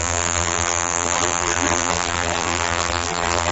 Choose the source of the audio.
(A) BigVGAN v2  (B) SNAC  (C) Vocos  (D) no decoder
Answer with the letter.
A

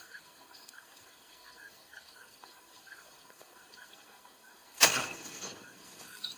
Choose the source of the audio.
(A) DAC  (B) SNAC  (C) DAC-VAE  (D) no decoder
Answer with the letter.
B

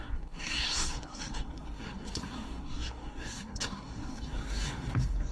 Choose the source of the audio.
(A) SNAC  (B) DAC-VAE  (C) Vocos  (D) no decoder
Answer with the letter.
A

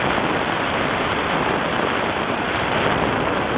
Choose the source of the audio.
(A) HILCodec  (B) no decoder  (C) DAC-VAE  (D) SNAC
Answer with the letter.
B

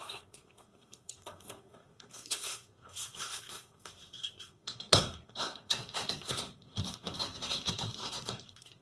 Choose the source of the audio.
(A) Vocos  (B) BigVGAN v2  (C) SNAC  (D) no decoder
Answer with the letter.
C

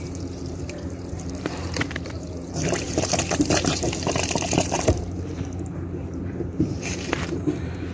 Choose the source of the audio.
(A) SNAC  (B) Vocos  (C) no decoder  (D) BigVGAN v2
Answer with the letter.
D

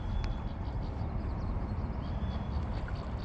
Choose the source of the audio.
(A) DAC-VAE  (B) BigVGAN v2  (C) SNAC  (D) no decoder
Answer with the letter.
B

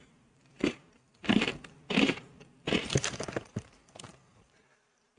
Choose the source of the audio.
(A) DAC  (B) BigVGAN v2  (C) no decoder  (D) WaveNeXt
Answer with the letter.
B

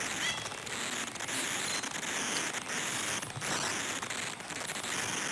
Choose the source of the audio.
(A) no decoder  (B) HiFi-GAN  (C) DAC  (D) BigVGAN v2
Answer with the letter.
A